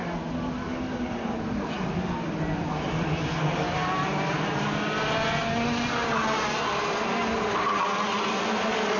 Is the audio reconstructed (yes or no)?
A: no